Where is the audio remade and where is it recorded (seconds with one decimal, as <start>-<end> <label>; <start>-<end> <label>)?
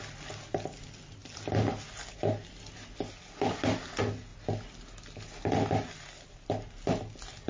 0.0-7.5 recorded